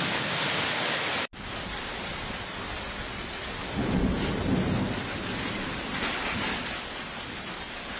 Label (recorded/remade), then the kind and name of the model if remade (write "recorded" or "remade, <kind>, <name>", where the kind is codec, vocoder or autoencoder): recorded